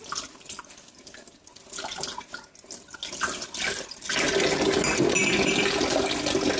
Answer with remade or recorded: recorded